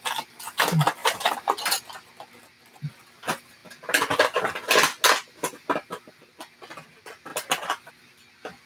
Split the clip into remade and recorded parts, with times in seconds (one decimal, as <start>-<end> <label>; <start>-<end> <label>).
0.0-1.0 recorded; 1.0-1.8 remade; 1.8-7.3 recorded; 7.3-7.9 remade; 7.9-8.7 recorded